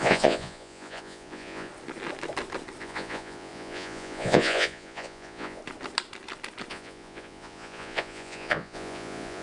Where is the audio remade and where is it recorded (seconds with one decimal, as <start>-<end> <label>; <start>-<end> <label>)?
0.0-1.7 remade; 1.7-2.8 recorded; 2.8-5.6 remade; 5.6-6.7 recorded; 6.7-9.4 remade